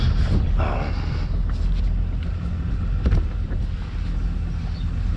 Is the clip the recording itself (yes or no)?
yes